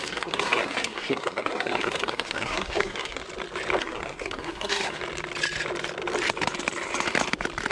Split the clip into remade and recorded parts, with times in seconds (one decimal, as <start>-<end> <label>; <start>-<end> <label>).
0.0-3.2 remade; 3.2-3.8 recorded; 3.8-5.0 remade; 5.0-7.7 recorded